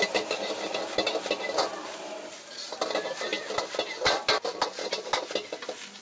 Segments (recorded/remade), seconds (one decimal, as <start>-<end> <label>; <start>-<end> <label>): 0.0-6.0 recorded

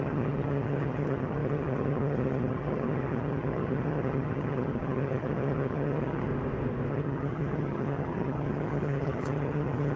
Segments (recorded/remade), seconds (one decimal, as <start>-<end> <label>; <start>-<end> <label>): 0.0-6.3 remade; 6.3-6.9 recorded; 6.9-10.0 remade

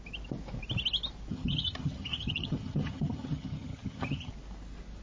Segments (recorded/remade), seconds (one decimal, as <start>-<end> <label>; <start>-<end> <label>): 0.0-1.3 recorded; 1.3-4.3 remade; 4.3-5.0 recorded

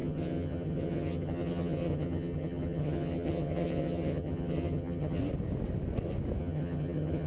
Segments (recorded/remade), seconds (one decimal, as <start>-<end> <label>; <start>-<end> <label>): 0.0-5.2 remade; 5.2-6.4 recorded; 6.4-7.3 remade

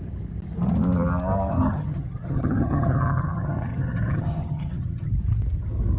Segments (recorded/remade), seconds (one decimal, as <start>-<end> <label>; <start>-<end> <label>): 0.0-1.5 recorded; 1.5-5.1 remade; 5.1-6.0 recorded

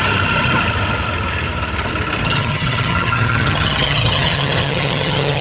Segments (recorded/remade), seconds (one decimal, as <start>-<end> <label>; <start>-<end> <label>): 0.0-2.2 recorded; 2.2-5.4 remade

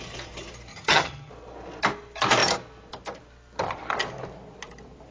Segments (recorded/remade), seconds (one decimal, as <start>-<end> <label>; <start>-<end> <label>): 0.0-0.7 recorded; 0.7-1.3 remade; 1.3-5.1 recorded